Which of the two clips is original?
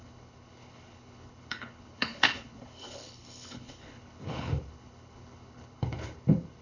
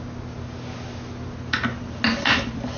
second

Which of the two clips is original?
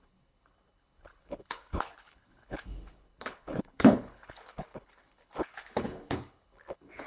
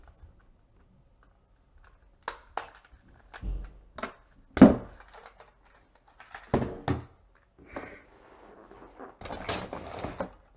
second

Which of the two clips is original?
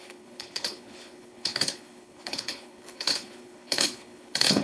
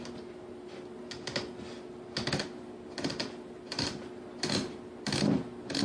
second